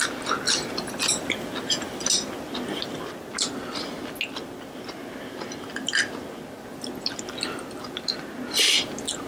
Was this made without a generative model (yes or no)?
yes